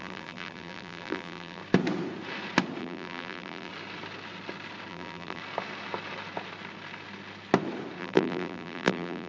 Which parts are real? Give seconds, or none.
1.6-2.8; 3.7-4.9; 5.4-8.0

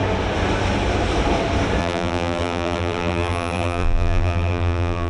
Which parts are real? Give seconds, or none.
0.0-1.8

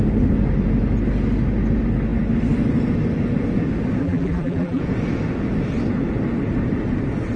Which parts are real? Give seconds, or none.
0.0-4.0; 4.8-7.4